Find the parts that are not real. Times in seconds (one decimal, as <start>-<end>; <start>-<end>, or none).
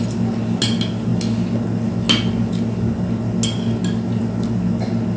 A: none